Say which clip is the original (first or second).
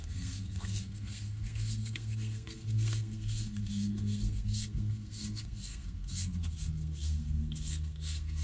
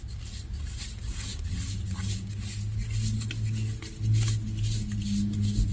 second